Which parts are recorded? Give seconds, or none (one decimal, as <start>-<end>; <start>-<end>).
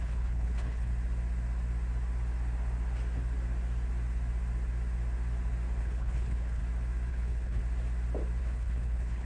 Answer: 0.9-5.8; 6.6-7.1; 7.6-8.4